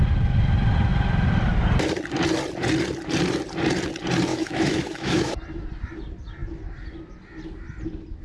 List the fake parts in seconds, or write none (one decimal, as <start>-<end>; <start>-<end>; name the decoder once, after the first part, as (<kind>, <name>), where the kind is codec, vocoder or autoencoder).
4.3-5.3 (autoencoder, DAC-VAE)